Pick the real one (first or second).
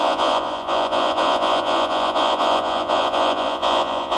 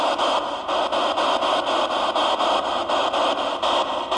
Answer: second